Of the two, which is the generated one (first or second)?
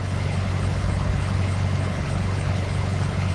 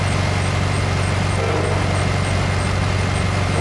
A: first